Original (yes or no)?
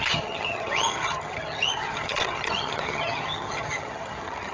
no